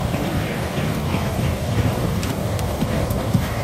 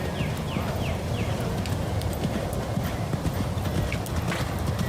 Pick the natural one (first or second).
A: second